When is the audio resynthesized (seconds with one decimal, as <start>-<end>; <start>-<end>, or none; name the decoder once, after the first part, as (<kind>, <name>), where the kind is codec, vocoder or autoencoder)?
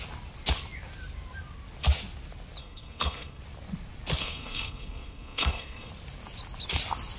2.6-3.4 (codec, SNAC); 4.2-5.9